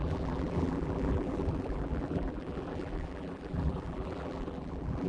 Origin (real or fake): fake